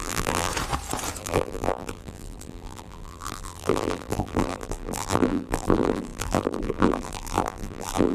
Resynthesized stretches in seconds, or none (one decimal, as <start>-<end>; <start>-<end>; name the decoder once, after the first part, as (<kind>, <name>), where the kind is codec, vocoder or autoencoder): 0.0-0.5 (vocoder, BigVGAN v2); 1.2-8.1